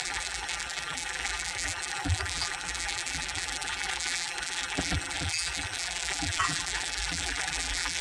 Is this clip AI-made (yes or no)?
yes